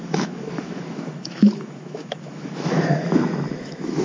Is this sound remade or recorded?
remade